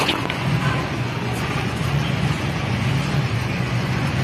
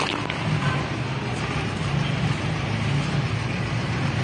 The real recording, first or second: second